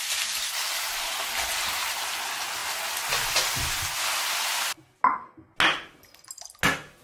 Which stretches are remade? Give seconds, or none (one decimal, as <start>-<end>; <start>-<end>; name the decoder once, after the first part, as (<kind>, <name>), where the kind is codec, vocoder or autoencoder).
none